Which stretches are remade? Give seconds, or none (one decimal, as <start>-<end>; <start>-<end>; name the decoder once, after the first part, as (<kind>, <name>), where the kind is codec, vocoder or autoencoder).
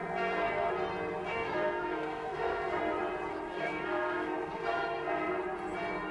0.0-0.7 (codec, SNAC); 1.3-2.8; 3.3-5.4